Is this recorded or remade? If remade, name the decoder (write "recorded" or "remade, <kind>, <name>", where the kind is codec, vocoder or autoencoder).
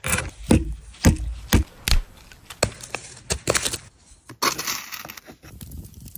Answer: recorded